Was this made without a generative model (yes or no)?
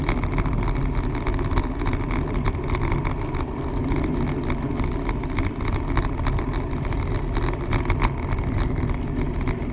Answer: yes